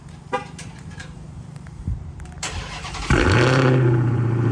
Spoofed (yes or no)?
yes